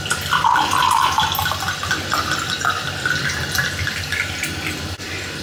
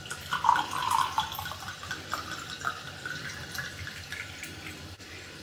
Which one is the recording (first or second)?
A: first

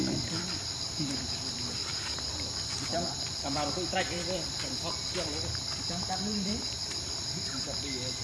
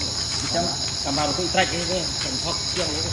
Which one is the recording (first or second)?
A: second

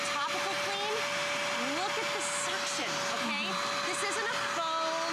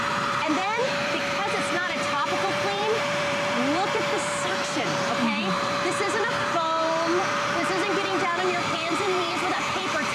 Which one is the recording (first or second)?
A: first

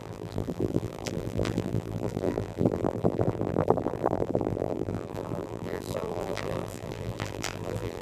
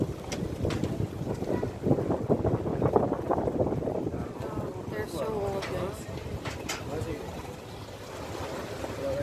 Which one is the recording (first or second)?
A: second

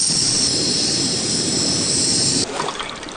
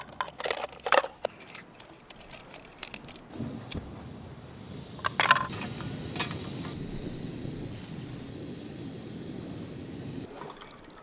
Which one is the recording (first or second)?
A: second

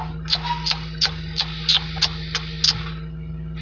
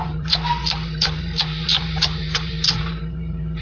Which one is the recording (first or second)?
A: first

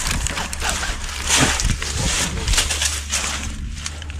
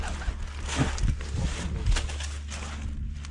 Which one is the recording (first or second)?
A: second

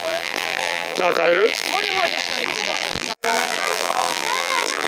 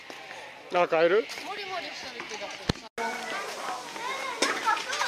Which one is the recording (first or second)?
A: second